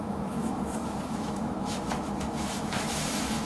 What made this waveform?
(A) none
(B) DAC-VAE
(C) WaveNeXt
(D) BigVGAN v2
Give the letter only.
B